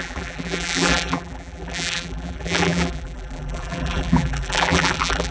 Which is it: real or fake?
fake